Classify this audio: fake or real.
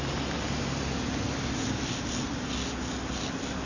real